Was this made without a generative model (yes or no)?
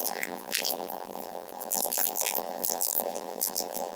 no